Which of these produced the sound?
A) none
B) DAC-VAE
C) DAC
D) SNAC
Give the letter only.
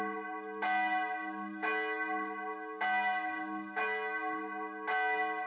A